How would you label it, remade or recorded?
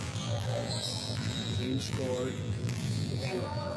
remade